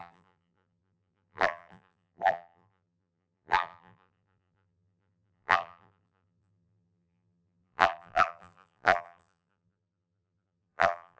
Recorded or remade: remade